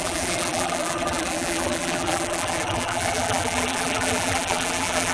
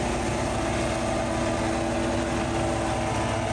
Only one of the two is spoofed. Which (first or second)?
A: first